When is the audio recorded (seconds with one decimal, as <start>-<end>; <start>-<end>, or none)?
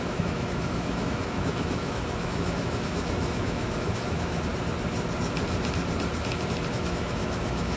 4.5-6.7